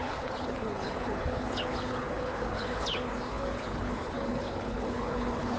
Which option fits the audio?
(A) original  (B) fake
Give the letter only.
B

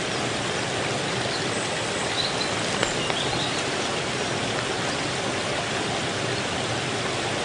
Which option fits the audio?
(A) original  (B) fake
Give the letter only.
A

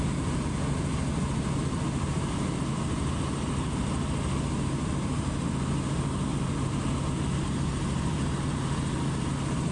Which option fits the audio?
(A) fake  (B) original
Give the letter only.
B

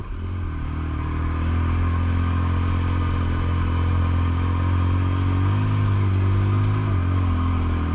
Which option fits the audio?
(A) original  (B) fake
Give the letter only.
A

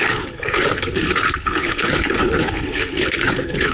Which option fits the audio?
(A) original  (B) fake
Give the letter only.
B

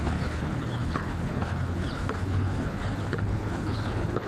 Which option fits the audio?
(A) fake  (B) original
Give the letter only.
A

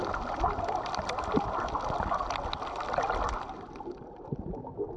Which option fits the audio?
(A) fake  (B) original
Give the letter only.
B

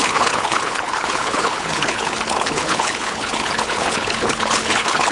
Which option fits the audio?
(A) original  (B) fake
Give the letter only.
B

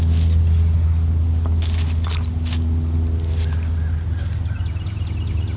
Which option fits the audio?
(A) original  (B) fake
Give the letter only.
A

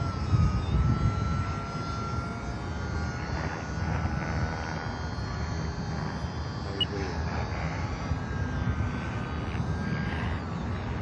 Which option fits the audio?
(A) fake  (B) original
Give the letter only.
B